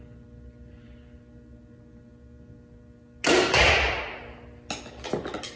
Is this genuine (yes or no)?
yes